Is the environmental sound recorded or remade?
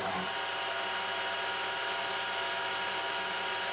recorded